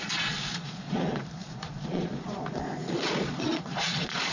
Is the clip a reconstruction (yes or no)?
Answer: yes